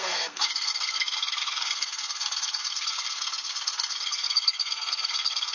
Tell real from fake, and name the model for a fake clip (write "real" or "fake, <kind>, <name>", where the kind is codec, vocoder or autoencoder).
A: fake, codec, SNAC